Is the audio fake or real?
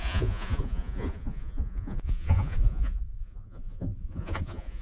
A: fake